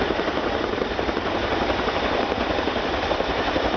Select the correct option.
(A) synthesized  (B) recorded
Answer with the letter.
B